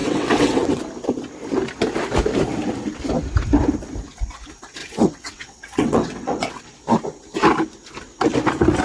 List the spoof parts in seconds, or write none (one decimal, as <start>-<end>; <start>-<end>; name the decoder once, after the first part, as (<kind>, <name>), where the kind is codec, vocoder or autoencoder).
0.0-0.8 (vocoder, WaveNeXt); 4.8-6.6